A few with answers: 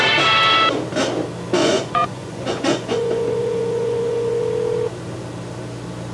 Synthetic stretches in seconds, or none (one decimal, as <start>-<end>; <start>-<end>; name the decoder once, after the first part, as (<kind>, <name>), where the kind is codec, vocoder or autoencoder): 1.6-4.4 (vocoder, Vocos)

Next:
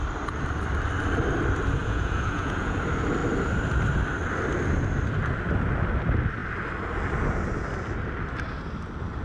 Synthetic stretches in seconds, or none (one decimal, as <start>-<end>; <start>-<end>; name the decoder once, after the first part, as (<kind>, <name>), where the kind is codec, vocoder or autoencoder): 1.8-2.8 (vocoder, Vocos)

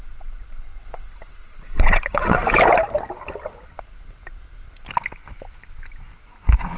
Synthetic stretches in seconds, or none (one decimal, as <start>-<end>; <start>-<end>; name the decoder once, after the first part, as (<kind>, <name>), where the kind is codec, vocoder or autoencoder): 0.0-2.4 (vocoder, Vocos)